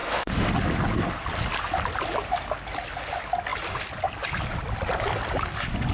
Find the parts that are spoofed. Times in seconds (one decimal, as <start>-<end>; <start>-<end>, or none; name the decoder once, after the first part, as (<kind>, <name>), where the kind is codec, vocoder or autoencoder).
0.0-0.5 (autoencoder, DAC-VAE)